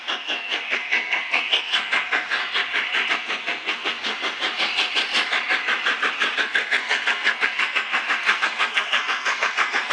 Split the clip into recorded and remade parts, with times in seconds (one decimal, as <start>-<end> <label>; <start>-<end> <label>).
0.0-2.4 remade; 2.4-3.1 recorded; 3.1-4.1 remade; 4.1-6.4 recorded; 6.4-9.9 remade